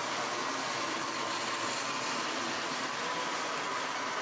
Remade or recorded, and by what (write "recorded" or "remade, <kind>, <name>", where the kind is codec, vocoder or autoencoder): recorded